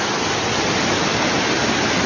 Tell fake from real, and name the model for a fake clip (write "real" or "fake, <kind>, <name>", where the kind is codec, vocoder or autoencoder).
real